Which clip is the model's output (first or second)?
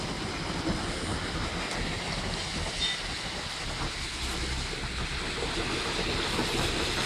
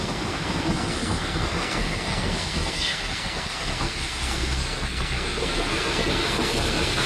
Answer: second